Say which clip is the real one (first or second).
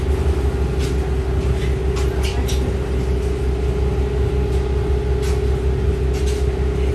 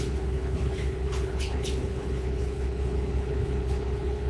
first